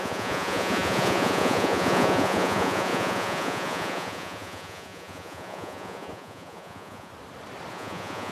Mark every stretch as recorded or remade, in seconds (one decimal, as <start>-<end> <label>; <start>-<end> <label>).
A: 0.0-7.1 remade; 7.1-7.7 recorded; 7.7-8.3 remade